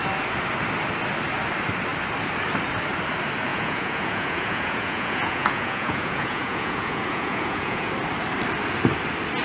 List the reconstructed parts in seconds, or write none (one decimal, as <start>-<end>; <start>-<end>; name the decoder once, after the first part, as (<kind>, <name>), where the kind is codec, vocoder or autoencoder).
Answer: 3.5-7.9 (vocoder, Vocos)